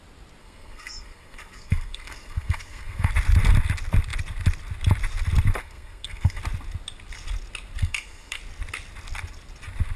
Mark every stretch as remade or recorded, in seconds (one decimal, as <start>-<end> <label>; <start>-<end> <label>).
0.0-0.4 recorded; 0.4-3.1 remade; 3.1-5.6 recorded; 5.6-6.4 remade; 6.4-7.8 recorded; 7.8-8.4 remade; 8.4-10.0 recorded